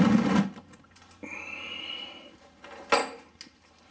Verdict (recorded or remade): recorded